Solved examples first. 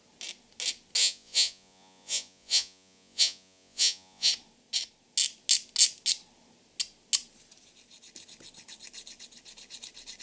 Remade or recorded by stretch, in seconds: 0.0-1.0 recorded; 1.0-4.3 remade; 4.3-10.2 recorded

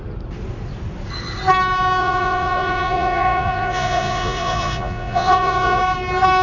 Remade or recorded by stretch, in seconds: 0.0-2.0 recorded; 2.0-5.8 remade; 5.8-6.4 recorded

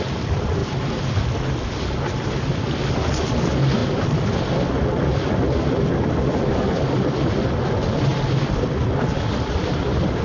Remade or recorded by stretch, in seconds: 0.0-10.2 recorded